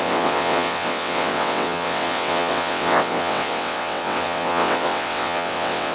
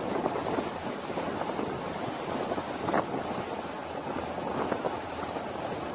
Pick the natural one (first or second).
second